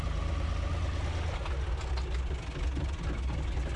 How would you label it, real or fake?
real